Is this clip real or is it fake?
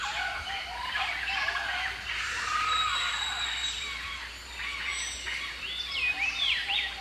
fake